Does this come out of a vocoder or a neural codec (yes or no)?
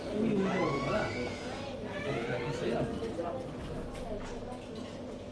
no